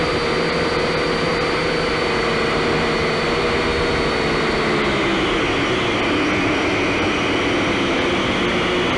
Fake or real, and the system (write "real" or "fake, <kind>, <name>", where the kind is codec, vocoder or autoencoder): real